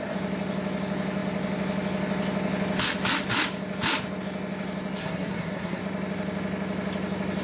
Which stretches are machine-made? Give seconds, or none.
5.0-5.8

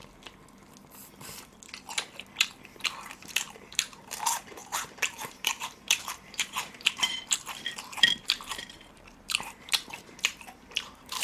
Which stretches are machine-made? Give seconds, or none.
2.8-11.2

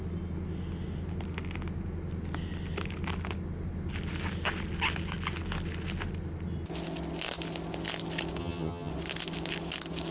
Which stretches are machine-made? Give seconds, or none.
8.4-8.9

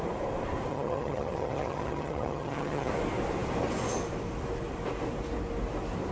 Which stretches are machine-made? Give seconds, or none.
0.7-2.9

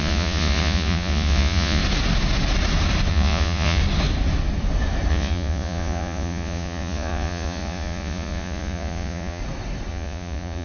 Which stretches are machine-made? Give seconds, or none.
0.0-1.8; 3.1-3.8; 5.1-9.4; 9.9-10.6